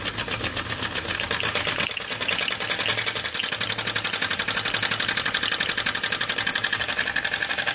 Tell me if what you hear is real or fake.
real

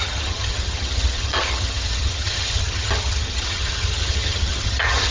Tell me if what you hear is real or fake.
fake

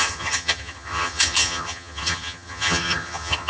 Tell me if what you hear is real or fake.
fake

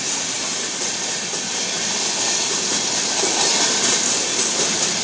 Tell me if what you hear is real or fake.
real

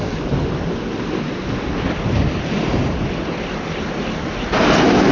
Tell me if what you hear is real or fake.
real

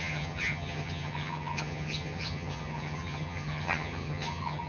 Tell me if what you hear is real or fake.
fake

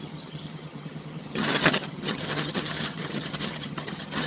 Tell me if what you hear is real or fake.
fake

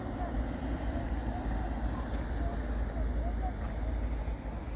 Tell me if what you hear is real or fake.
real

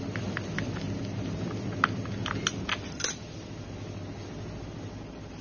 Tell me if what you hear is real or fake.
real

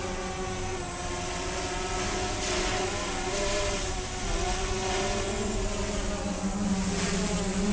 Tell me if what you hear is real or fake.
real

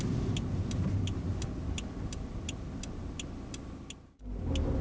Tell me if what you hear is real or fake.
real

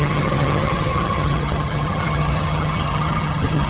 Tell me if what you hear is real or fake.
fake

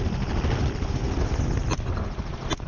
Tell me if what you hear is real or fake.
real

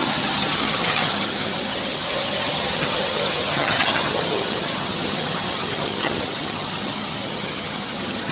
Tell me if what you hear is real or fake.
fake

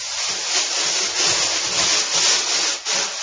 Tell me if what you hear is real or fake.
real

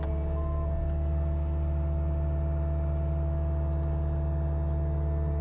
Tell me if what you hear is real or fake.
real